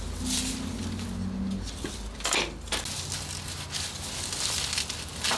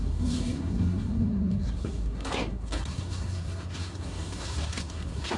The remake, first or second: second